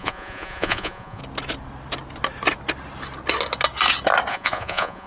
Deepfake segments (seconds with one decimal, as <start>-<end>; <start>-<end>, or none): 0.0-1.2; 4.3-5.1